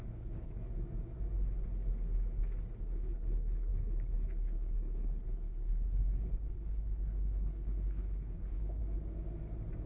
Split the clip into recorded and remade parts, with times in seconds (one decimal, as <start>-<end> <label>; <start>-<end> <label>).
0.0-0.7 remade; 0.7-2.8 recorded; 2.8-8.8 remade; 8.8-9.9 recorded